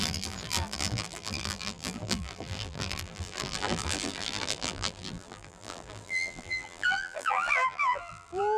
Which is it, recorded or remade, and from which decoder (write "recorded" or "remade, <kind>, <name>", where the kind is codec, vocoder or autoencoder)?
remade, vocoder, BigVGAN v2